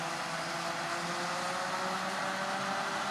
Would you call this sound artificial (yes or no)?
no